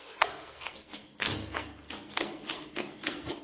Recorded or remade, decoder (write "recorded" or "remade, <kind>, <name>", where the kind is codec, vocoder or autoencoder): remade, codec, SNAC